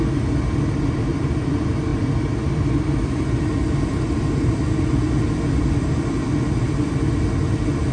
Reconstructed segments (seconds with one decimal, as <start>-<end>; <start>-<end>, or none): none